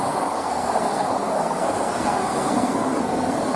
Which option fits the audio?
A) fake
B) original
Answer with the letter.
A